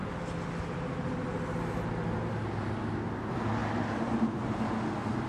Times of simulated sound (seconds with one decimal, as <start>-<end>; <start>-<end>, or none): none